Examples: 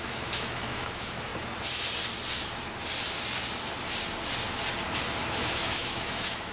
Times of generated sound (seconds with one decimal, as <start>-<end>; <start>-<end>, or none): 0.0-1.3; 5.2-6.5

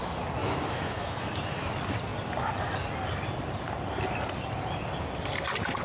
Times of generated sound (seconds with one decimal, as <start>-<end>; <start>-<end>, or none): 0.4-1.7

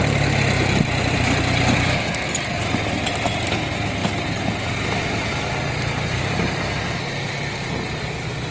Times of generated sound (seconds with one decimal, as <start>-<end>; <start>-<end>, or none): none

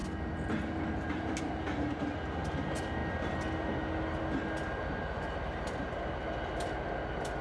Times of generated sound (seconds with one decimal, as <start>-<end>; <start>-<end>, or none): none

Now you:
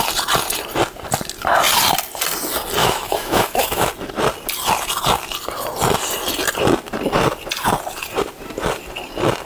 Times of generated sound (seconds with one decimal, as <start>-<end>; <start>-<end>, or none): 2.8-3.9